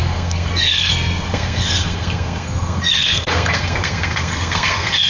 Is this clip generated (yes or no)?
yes